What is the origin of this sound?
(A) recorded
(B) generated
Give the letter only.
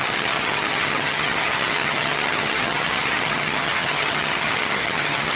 B